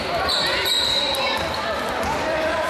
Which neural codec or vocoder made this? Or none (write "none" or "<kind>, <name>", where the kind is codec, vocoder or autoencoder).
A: vocoder, BigVGAN v2